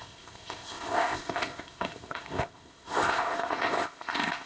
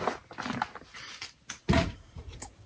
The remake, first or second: first